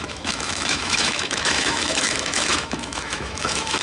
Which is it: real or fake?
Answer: fake